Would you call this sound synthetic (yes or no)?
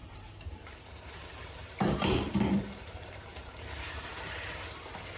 yes